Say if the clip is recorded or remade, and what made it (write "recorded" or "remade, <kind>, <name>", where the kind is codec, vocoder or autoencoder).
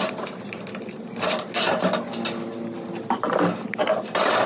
recorded